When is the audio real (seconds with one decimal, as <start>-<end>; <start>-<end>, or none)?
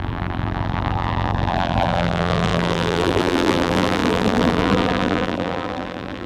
none